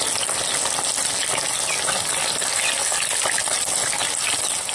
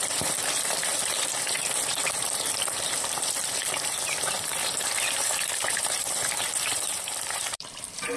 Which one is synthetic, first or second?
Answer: second